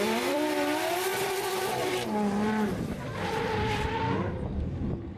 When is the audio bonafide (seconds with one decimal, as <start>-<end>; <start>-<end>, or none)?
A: none